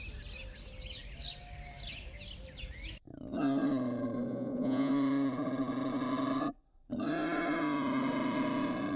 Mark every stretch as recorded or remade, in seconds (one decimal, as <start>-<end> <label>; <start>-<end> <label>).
0.0-4.3 recorded; 4.3-4.9 remade; 4.9-9.0 recorded